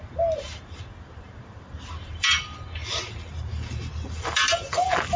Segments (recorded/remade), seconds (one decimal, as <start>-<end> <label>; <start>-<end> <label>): 0.0-5.2 remade